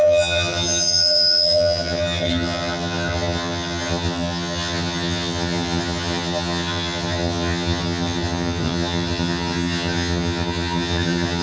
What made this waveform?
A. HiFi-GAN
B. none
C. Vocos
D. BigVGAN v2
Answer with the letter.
A